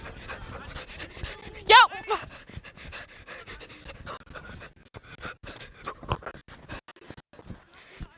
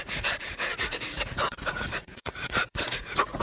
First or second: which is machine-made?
second